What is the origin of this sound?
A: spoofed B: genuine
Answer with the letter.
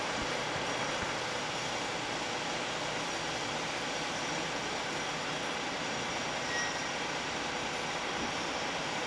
B